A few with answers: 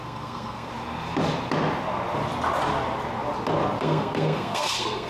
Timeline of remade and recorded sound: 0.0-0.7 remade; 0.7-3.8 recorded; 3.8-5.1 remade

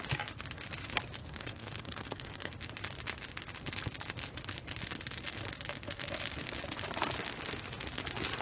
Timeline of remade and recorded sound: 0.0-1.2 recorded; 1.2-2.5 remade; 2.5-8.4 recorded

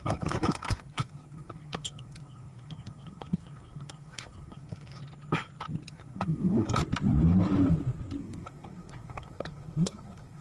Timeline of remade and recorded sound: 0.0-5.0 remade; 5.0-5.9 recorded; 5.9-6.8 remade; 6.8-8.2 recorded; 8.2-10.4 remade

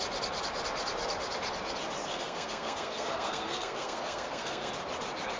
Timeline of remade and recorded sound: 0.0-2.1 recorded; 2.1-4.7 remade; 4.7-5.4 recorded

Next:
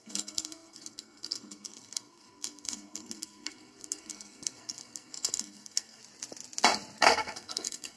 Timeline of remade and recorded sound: 0.0-6.0 remade; 6.0-7.0 recorded; 7.0-8.0 remade

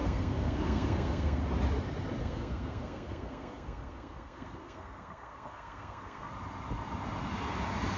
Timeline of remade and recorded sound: 0.0-1.4 remade; 1.4-2.2 recorded; 2.2-6.3 remade; 6.3-8.0 recorded